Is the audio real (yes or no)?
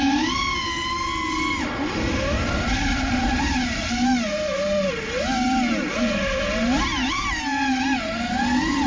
yes